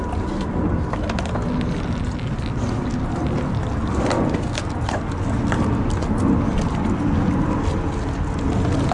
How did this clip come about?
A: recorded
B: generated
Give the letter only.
A